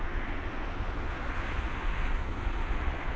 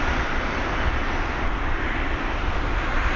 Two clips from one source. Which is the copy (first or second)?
first